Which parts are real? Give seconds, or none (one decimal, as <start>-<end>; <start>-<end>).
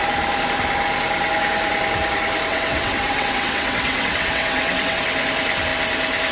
0.0-2.5; 5.0-6.3